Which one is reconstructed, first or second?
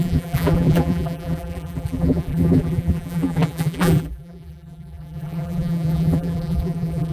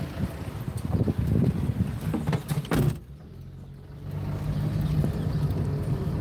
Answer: first